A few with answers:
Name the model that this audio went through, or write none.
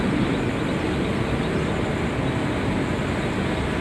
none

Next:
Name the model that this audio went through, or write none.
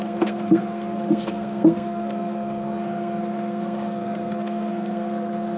codec, SNAC